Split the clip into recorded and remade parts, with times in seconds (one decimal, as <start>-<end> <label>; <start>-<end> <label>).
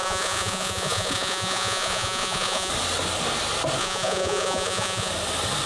0.0-2.7 remade; 2.7-3.8 recorded; 3.8-5.1 remade; 5.1-5.7 recorded